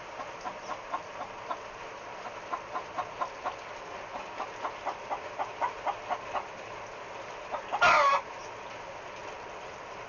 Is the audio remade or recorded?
recorded